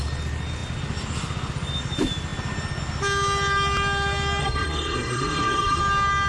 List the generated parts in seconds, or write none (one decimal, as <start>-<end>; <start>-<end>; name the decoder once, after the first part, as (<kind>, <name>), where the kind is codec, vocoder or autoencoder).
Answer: 4.4-5.8 (codec, SNAC)